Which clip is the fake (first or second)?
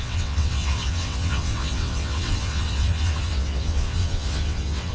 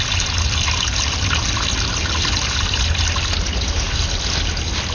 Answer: first